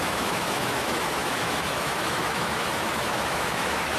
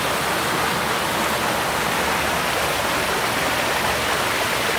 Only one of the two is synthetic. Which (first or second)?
first